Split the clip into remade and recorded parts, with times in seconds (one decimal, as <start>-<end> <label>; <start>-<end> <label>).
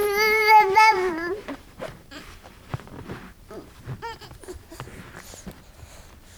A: 0.0-3.8 remade; 3.8-6.4 recorded